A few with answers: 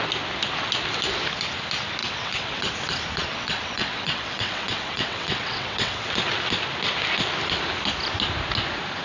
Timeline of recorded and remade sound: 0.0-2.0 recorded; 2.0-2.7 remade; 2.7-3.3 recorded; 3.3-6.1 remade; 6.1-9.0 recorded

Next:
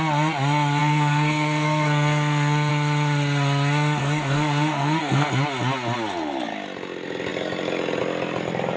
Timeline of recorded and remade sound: 0.0-0.8 recorded; 0.8-2.7 remade; 2.7-4.0 recorded; 4.0-5.3 remade; 5.3-8.8 recorded

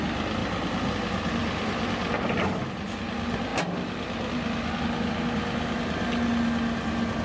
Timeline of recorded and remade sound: 0.0-1.4 recorded; 1.4-3.0 remade; 3.0-7.2 recorded

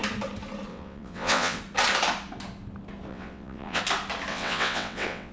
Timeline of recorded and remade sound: 0.0-0.7 recorded; 0.7-1.6 remade; 1.6-3.1 recorded; 3.1-3.8 remade; 3.8-4.3 recorded; 4.3-5.3 remade

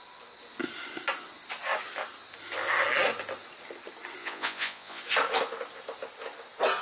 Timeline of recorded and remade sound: 0.0-4.2 recorded; 4.2-5.0 remade; 5.0-6.8 recorded